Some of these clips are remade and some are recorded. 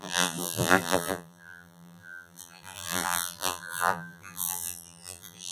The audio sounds remade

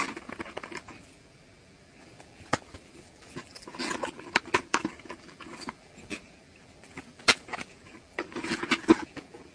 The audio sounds remade